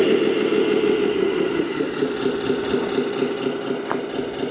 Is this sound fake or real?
real